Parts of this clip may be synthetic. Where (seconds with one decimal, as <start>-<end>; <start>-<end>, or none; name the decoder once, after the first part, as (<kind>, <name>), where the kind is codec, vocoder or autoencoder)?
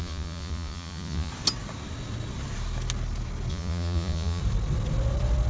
0.0-1.3 (vocoder, Vocos); 3.5-4.4